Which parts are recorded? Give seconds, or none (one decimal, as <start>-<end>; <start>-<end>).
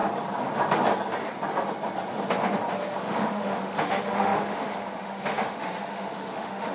0.0-3.0